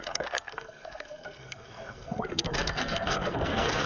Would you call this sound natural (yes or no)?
no